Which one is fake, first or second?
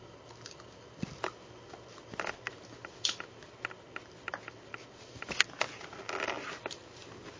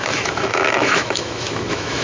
second